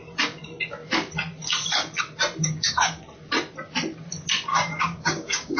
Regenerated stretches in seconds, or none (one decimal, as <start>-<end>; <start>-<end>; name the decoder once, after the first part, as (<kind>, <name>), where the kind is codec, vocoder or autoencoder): 2.4-3.0 (codec, DAC); 4.5-5.6